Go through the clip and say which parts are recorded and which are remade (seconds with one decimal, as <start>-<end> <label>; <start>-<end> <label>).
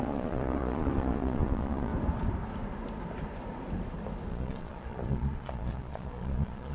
0.0-1.9 remade; 1.9-4.3 recorded; 4.3-6.7 remade